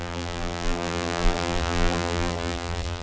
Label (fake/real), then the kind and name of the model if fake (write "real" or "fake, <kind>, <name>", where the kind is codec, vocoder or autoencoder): fake, vocoder, BigVGAN v2